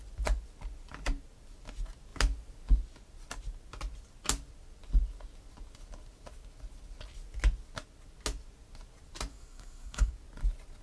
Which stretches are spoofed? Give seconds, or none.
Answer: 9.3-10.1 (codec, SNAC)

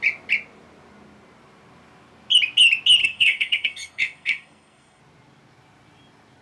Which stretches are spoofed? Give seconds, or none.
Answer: 3.0-5.0 (codec, SNAC)

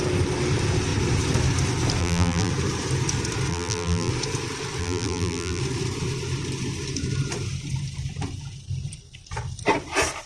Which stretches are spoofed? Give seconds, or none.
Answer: 2.0-2.5 (vocoder, BigVGAN v2); 3.5-4.1; 4.8-5.6

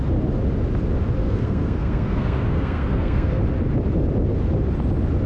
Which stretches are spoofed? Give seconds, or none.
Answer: 1.2-3.4 (codec, SNAC)

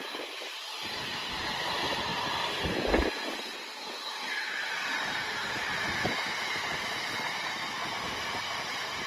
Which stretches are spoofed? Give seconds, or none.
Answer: none

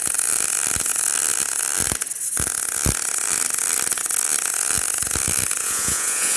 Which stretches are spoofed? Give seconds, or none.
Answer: 5.6-6.4 (vocoder, Vocos)

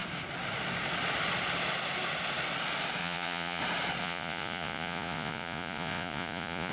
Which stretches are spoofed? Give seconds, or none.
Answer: 3.0-3.6 (vocoder, Vocos); 4.0-6.7